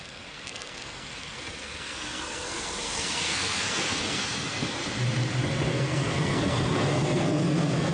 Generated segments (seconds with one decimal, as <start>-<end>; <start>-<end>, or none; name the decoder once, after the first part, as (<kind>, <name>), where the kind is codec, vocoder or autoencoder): 0.0-4.8 (codec, SNAC); 5.7-7.9